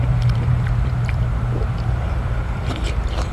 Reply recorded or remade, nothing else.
remade